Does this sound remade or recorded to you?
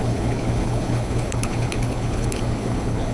remade